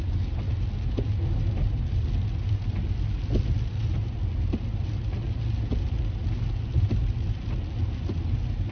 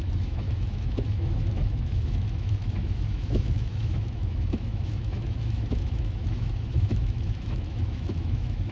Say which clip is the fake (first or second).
second